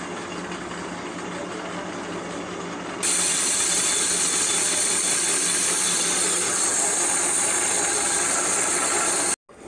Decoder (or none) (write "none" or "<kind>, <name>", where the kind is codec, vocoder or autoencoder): none